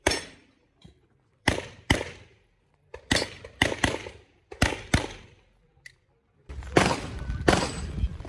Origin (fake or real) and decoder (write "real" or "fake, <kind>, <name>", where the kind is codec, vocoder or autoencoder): fake, vocoder, BigVGAN v2